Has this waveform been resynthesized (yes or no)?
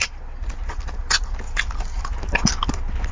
no